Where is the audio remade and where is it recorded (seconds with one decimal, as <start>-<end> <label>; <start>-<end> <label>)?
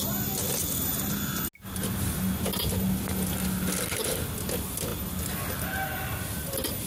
0.0-6.9 recorded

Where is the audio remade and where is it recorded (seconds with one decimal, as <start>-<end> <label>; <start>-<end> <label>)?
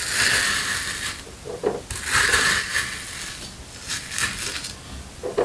0.0-5.4 recorded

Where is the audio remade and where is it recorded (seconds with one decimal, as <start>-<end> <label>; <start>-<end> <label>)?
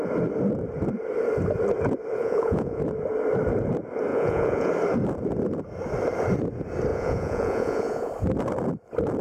0.0-2.2 recorded; 2.2-2.8 remade; 2.8-4.1 recorded; 4.1-4.7 remade; 4.7-6.9 recorded; 6.9-8.1 remade; 8.1-9.2 recorded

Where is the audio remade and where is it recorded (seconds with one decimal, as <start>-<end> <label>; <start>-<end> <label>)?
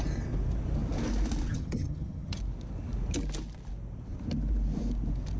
0.0-1.5 recorded; 1.5-2.4 remade; 2.4-5.4 recorded